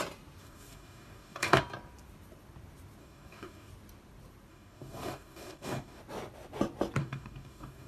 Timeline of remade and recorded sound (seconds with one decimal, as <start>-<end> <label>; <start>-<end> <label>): 0.0-0.4 recorded; 0.4-1.6 remade; 1.6-3.0 recorded; 3.0-3.7 remade; 3.7-4.5 recorded; 4.5-6.0 remade; 6.0-7.0 recorded; 7.0-7.9 remade